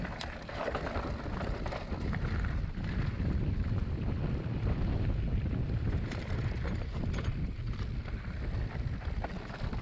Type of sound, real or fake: fake